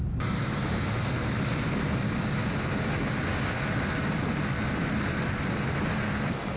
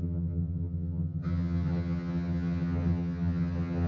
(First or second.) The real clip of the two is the first